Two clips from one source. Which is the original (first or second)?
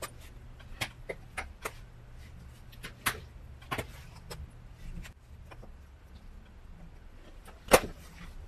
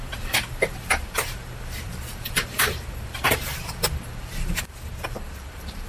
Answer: first